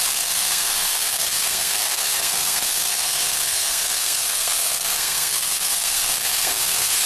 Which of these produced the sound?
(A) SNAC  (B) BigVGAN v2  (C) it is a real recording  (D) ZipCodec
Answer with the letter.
A